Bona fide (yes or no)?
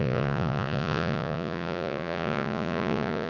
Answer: no